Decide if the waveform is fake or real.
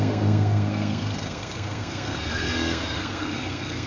fake